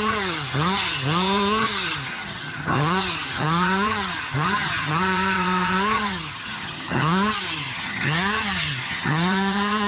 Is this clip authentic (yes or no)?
no